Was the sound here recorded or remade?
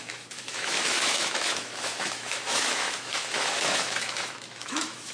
remade